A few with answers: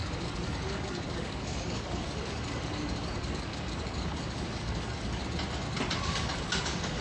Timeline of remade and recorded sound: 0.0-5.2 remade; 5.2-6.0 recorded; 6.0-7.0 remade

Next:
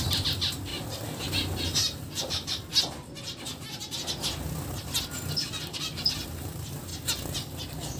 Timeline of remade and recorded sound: 0.0-8.0 recorded

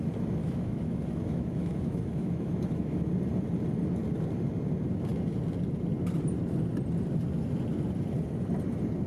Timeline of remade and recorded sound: 0.0-0.4 recorded; 0.4-3.1 remade; 3.1-9.1 recorded

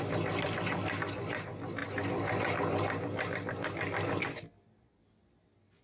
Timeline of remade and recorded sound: 0.0-5.8 recorded